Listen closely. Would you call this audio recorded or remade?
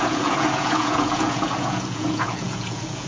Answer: remade